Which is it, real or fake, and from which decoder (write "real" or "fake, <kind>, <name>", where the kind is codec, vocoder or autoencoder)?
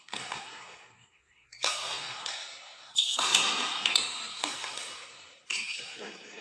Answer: fake, codec, SNAC